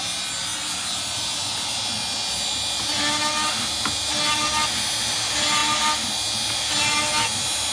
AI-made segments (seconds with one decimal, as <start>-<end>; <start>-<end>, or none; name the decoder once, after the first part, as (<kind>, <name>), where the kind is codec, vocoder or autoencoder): none